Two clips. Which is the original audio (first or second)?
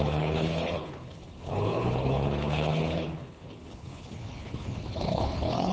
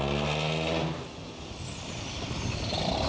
second